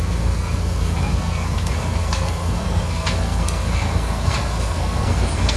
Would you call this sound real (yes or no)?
no